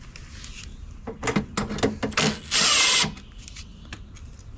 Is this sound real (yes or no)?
yes